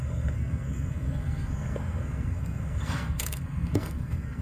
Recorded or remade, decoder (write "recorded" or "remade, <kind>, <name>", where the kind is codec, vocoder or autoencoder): remade, codec, SNAC